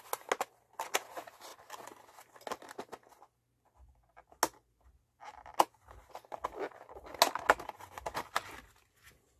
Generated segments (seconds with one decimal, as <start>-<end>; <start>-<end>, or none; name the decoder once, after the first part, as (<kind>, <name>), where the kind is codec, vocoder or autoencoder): none